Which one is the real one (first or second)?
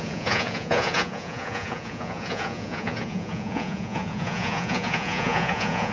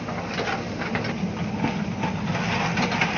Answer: second